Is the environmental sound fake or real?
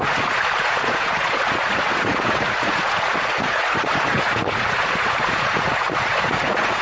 fake